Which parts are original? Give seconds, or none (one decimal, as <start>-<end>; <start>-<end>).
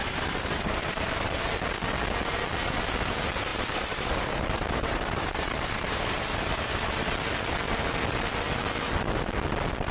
1.4-3.5; 6.9-9.9